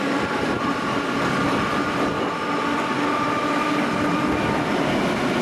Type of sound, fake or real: real